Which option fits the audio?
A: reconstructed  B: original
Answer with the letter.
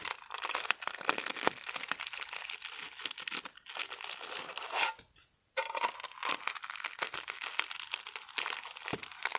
B